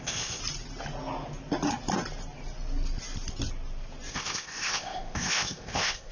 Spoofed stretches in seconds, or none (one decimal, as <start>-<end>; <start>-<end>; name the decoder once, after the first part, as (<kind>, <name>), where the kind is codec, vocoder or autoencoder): 0.0-0.4 (codec, ZipCodec); 4.1-6.1